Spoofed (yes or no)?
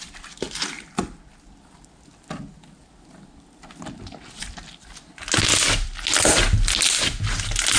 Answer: no